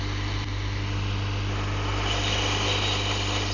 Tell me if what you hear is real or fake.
real